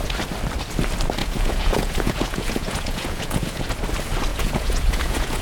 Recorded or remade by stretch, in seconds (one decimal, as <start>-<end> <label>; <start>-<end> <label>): 0.0-1.2 recorded; 1.2-3.7 remade; 3.7-4.3 recorded; 4.3-5.4 remade